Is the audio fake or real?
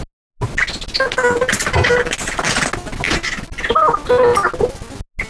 real